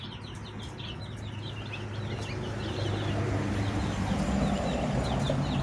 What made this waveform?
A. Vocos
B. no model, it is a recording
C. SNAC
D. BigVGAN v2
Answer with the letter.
B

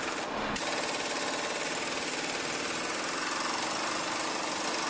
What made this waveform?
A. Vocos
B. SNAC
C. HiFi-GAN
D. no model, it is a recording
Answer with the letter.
D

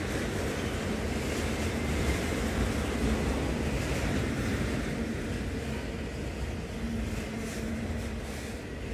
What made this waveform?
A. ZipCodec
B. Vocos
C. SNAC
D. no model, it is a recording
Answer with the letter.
D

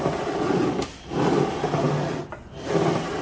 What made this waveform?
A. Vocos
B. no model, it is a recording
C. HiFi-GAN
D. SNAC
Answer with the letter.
B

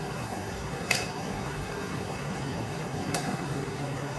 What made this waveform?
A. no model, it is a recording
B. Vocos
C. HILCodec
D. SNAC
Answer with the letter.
D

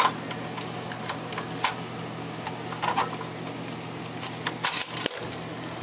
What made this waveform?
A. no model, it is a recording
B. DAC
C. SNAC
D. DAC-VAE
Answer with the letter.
A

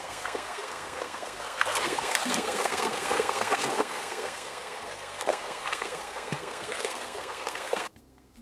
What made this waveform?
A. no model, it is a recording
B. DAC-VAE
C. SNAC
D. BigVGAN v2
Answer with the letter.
C